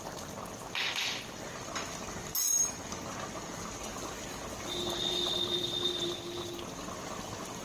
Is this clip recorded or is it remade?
recorded